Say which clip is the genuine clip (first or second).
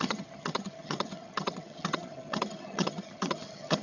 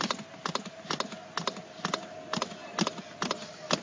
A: second